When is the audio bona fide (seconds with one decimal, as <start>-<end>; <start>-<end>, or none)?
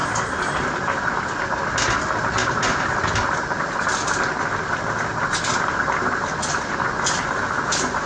0.0-8.1